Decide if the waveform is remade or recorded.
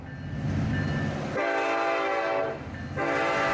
recorded